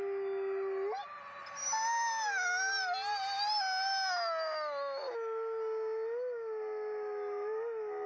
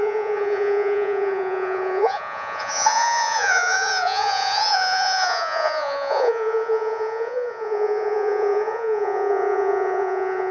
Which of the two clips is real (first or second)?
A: first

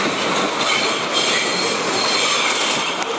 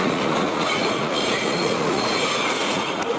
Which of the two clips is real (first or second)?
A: first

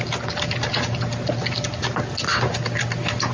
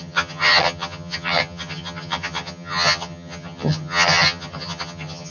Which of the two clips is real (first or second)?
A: first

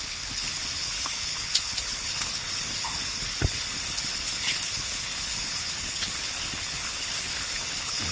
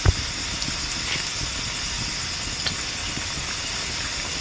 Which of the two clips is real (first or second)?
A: second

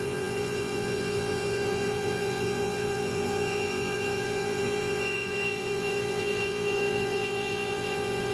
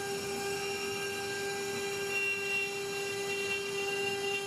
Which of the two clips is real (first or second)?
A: second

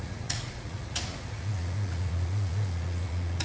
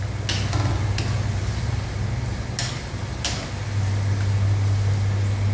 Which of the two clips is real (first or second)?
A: second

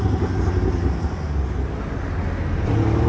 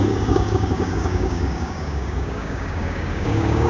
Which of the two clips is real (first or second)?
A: first